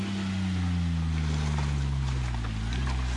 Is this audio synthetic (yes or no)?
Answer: no